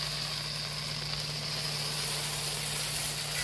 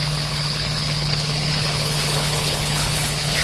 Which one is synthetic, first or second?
second